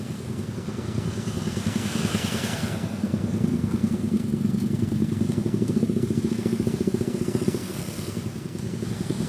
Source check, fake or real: fake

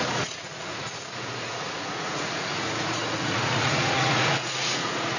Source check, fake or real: fake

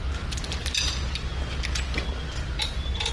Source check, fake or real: real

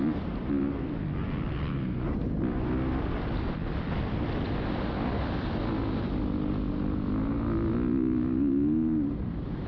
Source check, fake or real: real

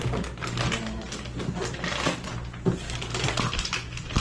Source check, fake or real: real